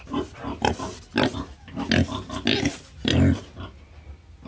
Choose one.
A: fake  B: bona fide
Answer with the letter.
B